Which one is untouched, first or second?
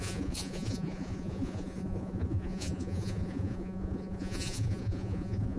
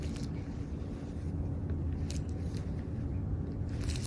second